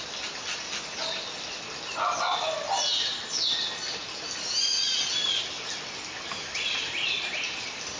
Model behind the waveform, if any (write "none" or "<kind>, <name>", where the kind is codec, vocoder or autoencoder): none